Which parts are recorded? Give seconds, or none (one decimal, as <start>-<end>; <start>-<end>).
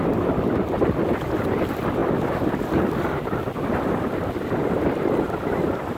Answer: 0.0-6.0